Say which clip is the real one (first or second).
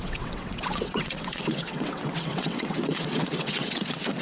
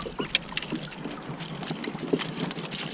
second